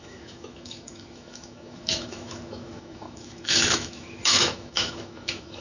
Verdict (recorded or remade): remade